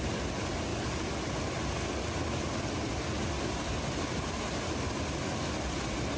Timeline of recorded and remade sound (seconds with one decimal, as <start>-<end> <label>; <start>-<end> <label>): 0.0-6.2 recorded